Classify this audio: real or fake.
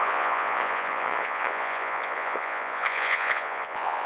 fake